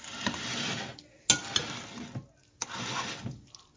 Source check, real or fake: real